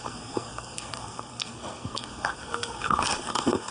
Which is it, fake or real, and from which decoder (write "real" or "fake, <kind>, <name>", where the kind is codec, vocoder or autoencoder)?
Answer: fake, codec, SNAC